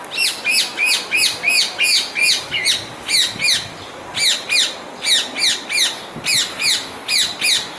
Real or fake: real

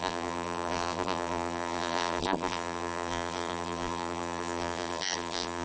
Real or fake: fake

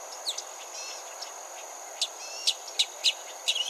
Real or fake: real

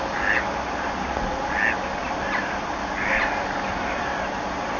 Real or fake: real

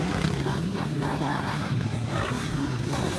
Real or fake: fake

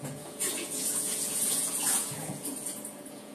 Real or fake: fake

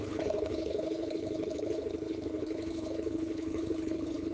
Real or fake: fake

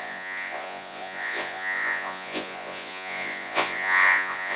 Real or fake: fake